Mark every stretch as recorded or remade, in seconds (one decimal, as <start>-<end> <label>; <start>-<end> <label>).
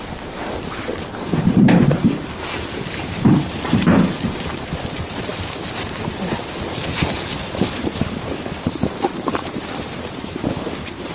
0.0-5.3 remade; 5.3-6.2 recorded; 6.2-9.6 remade; 9.6-10.2 recorded; 10.2-11.1 remade